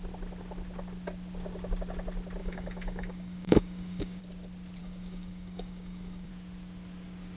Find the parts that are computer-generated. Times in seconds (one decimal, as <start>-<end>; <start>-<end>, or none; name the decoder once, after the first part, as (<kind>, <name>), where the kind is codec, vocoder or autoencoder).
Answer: 2.4-4.2 (codec, DAC); 4.8-6.3